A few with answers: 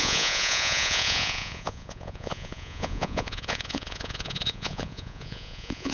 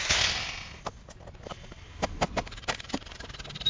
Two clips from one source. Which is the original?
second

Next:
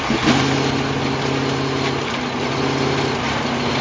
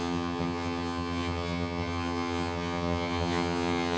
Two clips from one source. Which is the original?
first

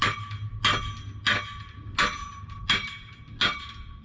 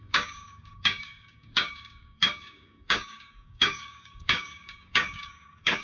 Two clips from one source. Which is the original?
first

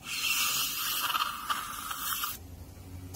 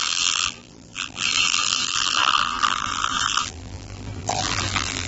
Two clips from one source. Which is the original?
first